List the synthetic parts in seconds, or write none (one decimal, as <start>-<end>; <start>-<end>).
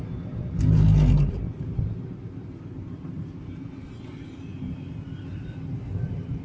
none